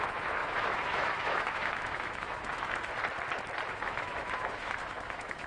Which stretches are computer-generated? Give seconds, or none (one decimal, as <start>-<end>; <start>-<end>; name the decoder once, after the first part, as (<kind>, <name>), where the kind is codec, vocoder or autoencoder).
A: 0.0-2.9 (autoencoder, DAC-VAE); 3.7-5.5